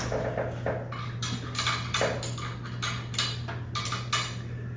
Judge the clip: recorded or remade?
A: recorded